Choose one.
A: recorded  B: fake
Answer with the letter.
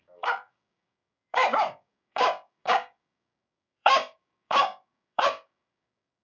B